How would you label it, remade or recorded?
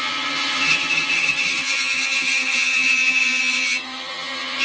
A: remade